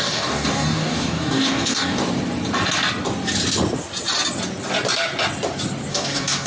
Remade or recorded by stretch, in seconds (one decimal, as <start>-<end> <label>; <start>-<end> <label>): 0.0-2.0 remade; 2.0-5.9 recorded; 5.9-6.5 remade